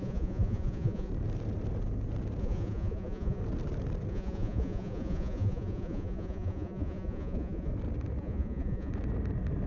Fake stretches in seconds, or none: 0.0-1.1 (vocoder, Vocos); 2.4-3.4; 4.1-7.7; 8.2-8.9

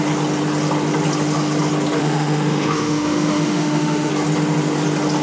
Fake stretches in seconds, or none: 2.0-4.1 (autoencoder, DAC-VAE)

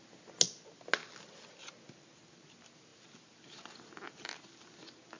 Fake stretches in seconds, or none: none